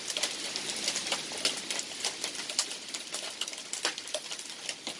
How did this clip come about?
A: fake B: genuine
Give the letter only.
B